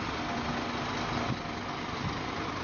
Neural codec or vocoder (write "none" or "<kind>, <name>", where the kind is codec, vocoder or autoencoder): none